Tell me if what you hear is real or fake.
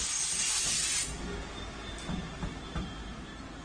real